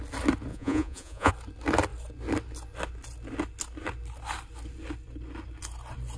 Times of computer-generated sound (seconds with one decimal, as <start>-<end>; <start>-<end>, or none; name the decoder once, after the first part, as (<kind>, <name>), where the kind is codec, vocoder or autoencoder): 0.5-1.3 (vocoder, Vocos)